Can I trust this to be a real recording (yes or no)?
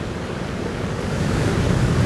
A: no